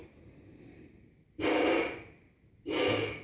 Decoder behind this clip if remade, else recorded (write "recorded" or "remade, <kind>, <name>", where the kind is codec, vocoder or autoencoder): recorded